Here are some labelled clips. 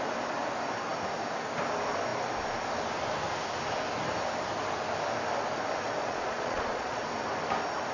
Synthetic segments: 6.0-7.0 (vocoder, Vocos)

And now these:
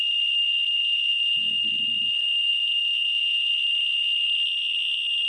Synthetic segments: 0.8-1.5 (vocoder, Vocos); 2.5-3.5

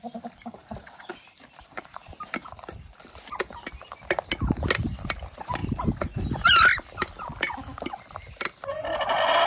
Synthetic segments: 0.6-1.1 (vocoder, BigVGAN v2); 2.0-3.7

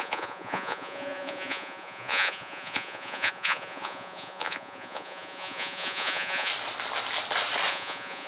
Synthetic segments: 0.0-6.5 (vocoder, Vocos); 7.7-8.3

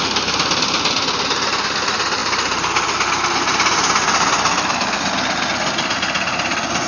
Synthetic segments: none